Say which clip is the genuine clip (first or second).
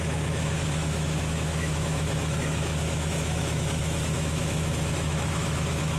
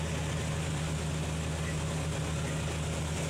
second